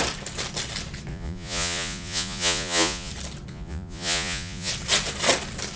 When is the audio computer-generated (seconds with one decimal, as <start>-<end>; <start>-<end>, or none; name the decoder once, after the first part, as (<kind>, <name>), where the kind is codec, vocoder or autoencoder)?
1.1-3.1 (vocoder, Vocos); 3.5-4.7